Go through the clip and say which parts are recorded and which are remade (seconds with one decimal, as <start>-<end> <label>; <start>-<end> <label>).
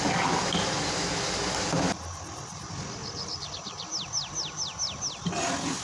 0.0-3.0 recorded; 3.0-3.5 remade; 3.5-5.8 recorded